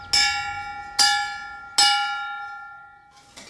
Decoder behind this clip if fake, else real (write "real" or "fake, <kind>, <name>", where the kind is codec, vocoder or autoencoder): real